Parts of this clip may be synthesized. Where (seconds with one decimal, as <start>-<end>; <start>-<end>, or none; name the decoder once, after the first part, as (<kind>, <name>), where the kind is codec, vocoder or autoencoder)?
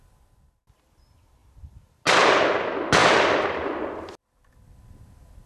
3.0-3.8 (vocoder, BigVGAN v2)